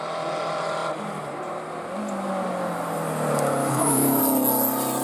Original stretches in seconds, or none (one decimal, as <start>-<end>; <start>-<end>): 0.0-3.6; 4.2-5.0